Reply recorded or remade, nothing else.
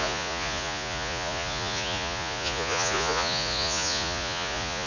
remade